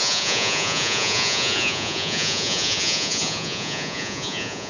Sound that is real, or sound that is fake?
fake